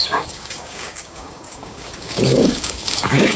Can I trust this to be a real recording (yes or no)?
no